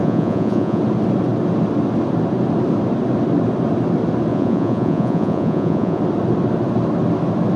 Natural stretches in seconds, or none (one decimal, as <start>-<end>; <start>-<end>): 0.8-4.3; 6.0-7.6